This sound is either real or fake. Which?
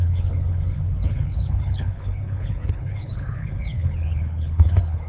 fake